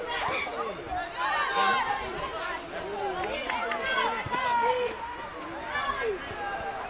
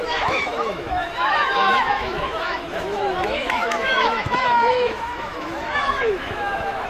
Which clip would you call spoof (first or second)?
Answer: second